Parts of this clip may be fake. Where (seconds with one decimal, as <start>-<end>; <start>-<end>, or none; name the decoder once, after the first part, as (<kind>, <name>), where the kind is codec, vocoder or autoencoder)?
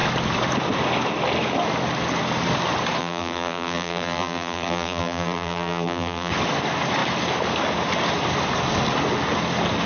3.0-6.3 (vocoder, BigVGAN v2)